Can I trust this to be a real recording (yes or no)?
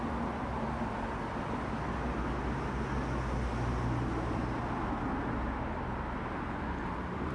yes